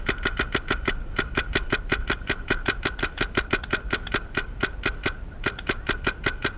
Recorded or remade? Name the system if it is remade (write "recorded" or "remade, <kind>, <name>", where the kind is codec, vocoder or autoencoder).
recorded